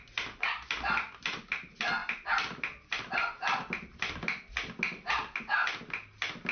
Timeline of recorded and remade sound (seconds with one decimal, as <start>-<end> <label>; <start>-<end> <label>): 0.0-6.5 recorded